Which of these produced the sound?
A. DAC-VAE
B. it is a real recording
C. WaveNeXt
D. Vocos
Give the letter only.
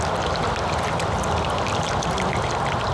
B